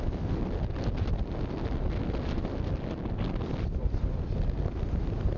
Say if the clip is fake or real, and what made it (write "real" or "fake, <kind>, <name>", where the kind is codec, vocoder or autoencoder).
real